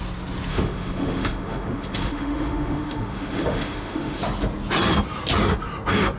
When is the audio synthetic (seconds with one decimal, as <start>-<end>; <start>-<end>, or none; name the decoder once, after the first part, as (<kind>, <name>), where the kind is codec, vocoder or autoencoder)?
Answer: 0.5-4.2 (autoencoder, DAC-VAE)